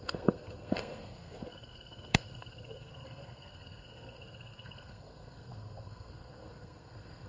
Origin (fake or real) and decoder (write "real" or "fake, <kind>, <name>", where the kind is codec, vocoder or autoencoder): fake, codec, SNAC